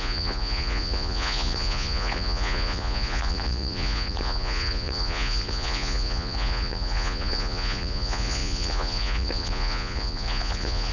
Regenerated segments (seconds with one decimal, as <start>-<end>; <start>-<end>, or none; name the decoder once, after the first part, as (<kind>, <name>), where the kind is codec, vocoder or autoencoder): 0.0-10.9 (vocoder, Vocos)